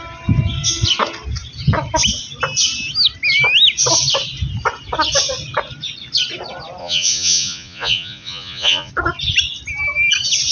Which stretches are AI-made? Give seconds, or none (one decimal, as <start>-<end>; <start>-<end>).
6.8-8.9